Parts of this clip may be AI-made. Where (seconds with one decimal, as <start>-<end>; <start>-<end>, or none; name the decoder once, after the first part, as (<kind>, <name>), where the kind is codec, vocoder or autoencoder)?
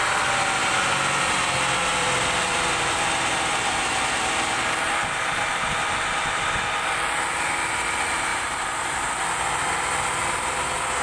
1.9-7.1 (vocoder, BigVGAN v2); 8.3-9.2